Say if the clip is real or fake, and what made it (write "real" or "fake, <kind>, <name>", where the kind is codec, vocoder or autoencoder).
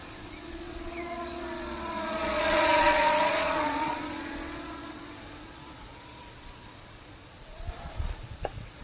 fake, vocoder, Vocos